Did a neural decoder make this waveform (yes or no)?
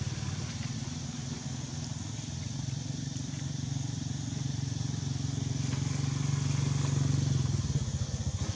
no